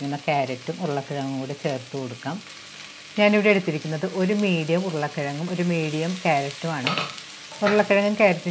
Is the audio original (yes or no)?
yes